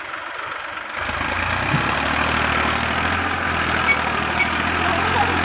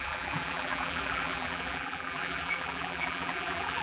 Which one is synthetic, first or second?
second